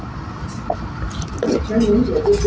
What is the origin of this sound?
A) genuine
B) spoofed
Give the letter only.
A